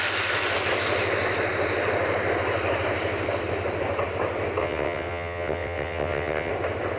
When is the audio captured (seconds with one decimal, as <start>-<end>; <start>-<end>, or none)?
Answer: 0.0-4.6; 6.5-7.0